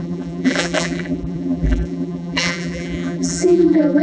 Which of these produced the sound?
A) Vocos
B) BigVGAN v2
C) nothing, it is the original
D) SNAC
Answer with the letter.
B